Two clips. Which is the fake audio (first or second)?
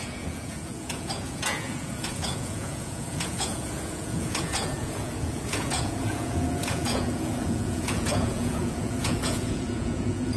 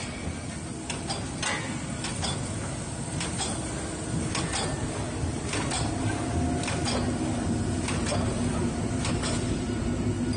first